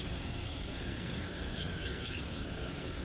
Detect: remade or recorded remade